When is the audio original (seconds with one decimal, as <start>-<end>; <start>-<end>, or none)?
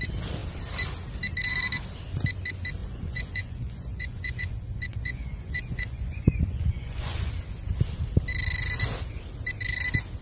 0.0-2.8; 7.3-10.2